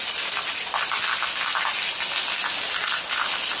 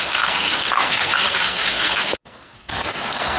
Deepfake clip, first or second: second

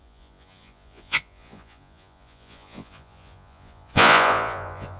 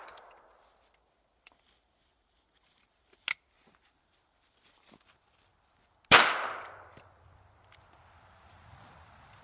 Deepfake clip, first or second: first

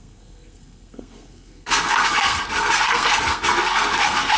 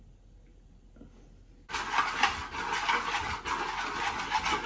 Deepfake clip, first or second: first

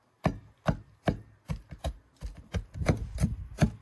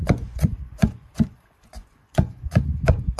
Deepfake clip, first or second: second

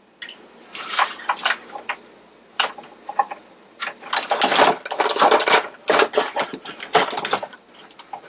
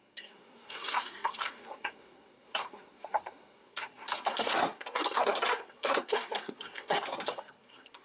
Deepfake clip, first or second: second